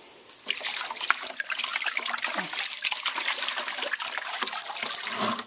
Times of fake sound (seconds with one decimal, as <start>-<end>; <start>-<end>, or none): none